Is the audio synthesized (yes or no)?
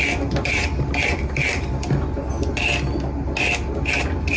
no